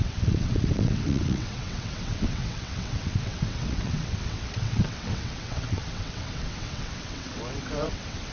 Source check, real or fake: fake